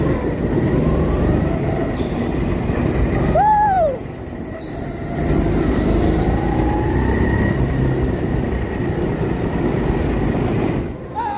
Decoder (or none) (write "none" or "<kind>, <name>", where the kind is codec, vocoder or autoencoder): vocoder, BigVGAN v2